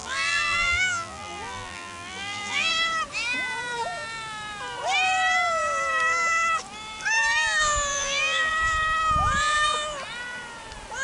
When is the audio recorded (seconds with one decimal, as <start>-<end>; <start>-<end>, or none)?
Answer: 2.7-7.9; 8.5-11.0